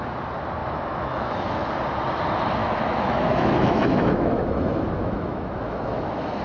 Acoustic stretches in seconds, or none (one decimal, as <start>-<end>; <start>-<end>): 0.0-0.6; 1.7-2.6